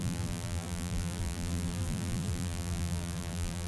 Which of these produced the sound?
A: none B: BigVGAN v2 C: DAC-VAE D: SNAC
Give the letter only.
B